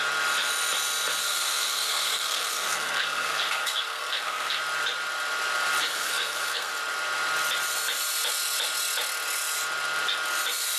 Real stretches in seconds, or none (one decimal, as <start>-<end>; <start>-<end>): 0.0-1.2; 4.6-5.8; 6.7-10.8